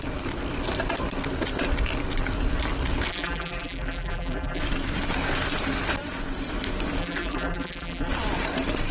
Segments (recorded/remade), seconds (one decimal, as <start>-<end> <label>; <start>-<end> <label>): 0.0-3.1 recorded; 3.1-4.6 remade; 4.6-7.0 recorded; 7.0-8.1 remade; 8.1-8.9 recorded

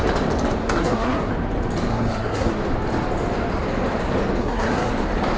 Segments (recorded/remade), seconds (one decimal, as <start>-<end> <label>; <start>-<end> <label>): 0.0-0.6 recorded; 0.6-1.3 remade; 1.3-1.9 recorded; 1.9-2.6 remade; 2.6-4.4 recorded; 4.4-4.9 remade; 4.9-5.4 recorded

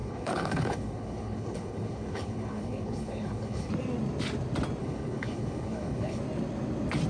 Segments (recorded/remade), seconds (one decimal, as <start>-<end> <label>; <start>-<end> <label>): 0.0-3.7 remade; 3.7-4.8 recorded; 4.8-6.2 remade; 6.2-7.1 recorded

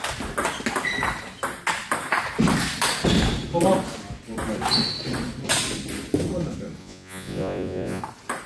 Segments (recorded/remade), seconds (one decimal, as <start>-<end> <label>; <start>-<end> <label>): 0.0-6.8 recorded; 6.8-8.0 remade; 8.0-8.5 recorded

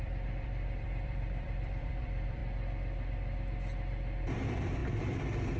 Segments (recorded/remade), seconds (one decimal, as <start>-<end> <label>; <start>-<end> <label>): 0.0-2.4 remade; 2.4-4.2 recorded; 4.2-5.6 remade